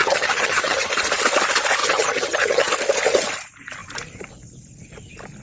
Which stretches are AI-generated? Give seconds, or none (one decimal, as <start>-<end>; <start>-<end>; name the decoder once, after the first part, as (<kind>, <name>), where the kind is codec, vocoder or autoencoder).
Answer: 0.0-0.9 (vocoder, HiFi-GAN); 1.8-2.7